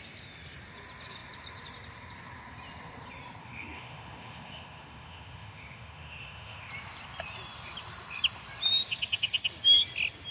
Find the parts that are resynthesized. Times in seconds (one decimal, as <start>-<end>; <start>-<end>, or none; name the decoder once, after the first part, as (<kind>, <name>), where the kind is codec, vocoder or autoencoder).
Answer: 3.4-6.7 (autoencoder, DAC-VAE)